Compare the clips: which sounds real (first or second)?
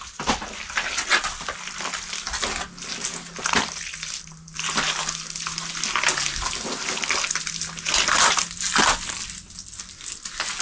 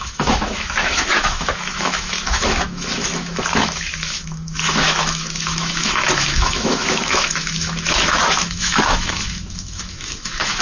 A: first